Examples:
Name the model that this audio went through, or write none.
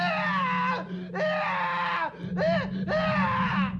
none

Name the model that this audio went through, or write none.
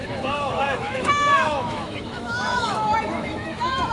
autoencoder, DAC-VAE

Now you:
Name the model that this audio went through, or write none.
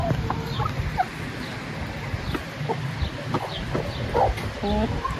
none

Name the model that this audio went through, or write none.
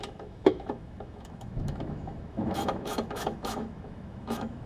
autoencoder, DAC-VAE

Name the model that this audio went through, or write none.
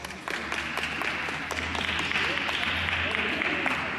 none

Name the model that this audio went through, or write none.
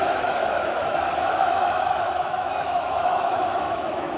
autoencoder, DAC-VAE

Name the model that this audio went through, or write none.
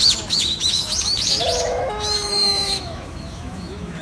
autoencoder, DAC-VAE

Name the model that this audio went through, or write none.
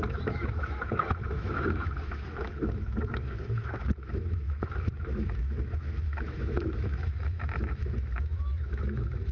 autoencoder, DAC-VAE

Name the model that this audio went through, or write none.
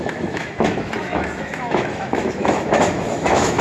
autoencoder, DAC-VAE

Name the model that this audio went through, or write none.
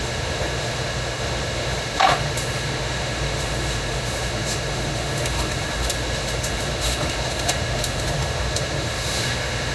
autoencoder, DAC-VAE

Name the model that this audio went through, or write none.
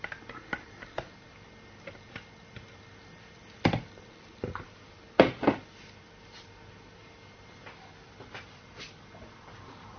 none